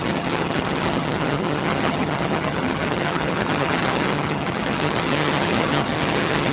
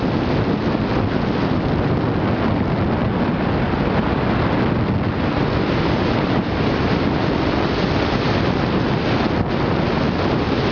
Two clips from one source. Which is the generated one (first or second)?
first